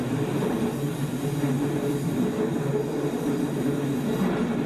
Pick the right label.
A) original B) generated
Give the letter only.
A